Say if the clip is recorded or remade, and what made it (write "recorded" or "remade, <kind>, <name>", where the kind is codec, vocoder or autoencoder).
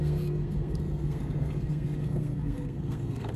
remade, codec, SNAC